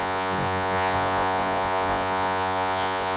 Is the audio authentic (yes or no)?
no